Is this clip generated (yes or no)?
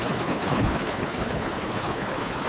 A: yes